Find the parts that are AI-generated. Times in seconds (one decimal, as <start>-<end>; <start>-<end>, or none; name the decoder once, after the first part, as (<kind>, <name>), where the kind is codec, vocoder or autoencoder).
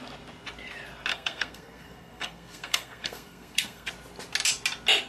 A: 1.1-3.9 (codec, SNAC)